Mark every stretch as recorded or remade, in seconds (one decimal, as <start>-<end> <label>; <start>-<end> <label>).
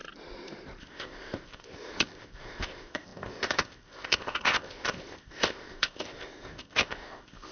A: 0.0-0.8 recorded; 0.8-7.5 remade